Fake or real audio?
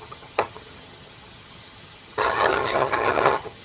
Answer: fake